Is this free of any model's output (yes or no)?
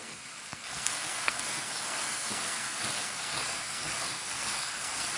no